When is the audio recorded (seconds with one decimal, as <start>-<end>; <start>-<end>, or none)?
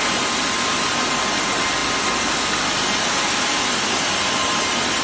0.0-5.0